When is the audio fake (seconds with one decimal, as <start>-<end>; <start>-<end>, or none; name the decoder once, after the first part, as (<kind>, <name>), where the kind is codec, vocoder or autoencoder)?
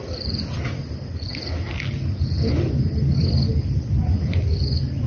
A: none